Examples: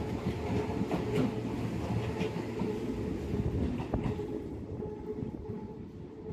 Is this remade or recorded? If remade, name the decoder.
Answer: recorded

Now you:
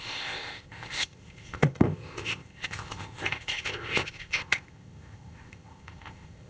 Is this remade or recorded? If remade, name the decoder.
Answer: remade, codec, ZipCodec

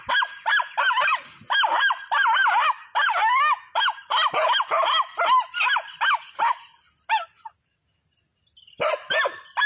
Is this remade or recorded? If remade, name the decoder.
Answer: recorded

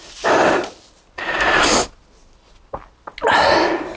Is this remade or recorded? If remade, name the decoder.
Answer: recorded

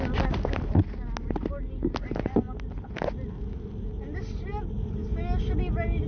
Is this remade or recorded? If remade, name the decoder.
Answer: recorded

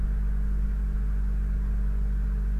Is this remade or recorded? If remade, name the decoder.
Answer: recorded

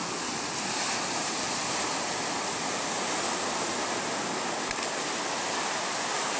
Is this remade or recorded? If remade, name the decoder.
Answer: recorded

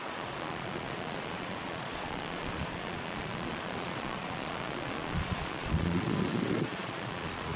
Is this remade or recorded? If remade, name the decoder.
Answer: remade, vocoder, Vocos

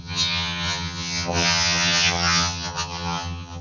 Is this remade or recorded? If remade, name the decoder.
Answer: remade, vocoder, HiFi-GAN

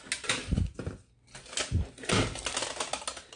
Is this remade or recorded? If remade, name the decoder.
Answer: recorded